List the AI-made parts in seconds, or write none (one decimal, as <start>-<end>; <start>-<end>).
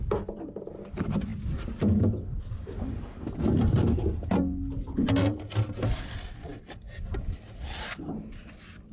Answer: none